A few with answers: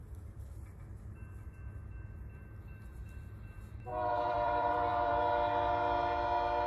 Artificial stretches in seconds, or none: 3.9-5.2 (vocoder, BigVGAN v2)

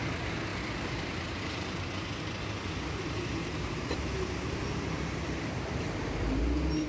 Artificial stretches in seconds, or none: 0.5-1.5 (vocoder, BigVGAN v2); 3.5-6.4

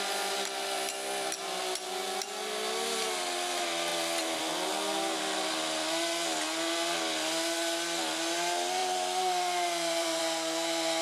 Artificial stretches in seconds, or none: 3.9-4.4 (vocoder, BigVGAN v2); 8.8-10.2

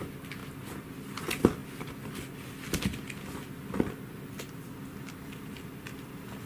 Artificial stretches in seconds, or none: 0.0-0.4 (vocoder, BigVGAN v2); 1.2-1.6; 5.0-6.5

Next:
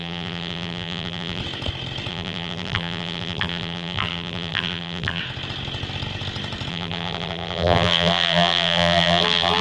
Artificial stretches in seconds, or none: 0.0-1.4 (vocoder, BigVGAN v2); 2.1-5.2; 6.7-9.6

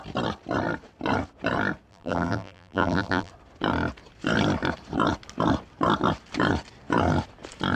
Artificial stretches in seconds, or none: 1.9-3.3 (vocoder, BigVGAN v2)

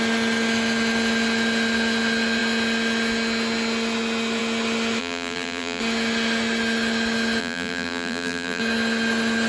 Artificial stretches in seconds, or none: 5.0-5.8 (vocoder, BigVGAN v2); 7.4-8.6

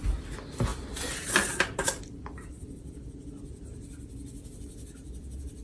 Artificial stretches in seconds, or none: 0.7-3.3 (vocoder, BigVGAN v2)